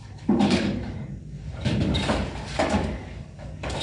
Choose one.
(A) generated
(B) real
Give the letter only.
A